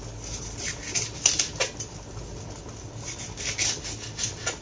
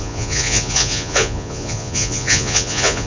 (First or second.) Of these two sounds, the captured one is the first